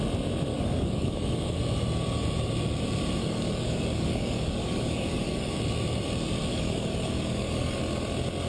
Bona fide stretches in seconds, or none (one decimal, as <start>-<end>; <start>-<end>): 0.0-0.5; 1.6-3.2; 5.6-6.5; 7.8-8.5